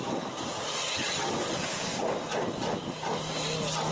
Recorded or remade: recorded